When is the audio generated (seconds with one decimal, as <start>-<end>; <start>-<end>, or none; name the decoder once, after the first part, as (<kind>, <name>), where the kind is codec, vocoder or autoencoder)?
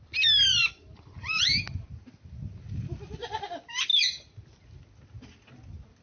0.6-1.4 (vocoder, BigVGAN v2)